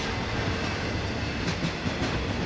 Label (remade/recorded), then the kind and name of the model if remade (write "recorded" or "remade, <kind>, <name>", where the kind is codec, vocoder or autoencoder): recorded